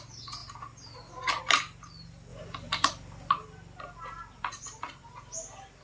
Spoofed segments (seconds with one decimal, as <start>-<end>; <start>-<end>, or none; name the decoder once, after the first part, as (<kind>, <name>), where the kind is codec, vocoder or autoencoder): none